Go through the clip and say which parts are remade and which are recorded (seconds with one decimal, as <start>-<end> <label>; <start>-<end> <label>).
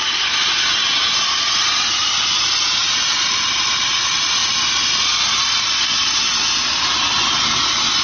0.0-8.0 recorded